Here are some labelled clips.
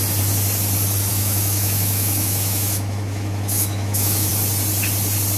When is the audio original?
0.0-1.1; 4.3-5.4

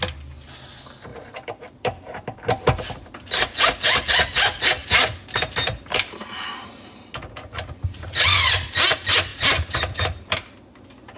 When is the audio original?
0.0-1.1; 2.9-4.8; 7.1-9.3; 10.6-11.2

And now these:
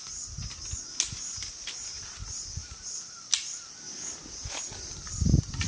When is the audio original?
0.0-5.7

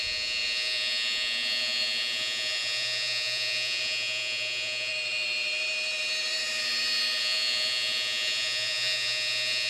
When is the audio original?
4.9-7.2

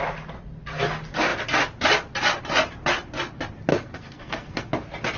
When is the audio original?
0.0-3.7; 4.7-5.2

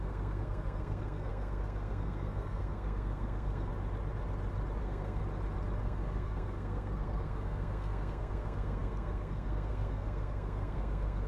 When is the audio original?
3.7-4.8; 5.2-5.8